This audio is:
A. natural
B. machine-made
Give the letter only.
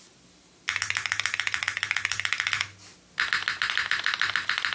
A